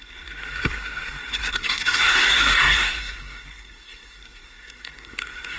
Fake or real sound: fake